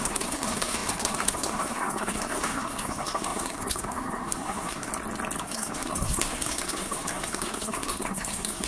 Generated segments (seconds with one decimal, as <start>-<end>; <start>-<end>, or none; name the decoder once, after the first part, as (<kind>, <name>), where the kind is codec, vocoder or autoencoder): 0.0-4.9 (codec, SNAC); 5.4-8.7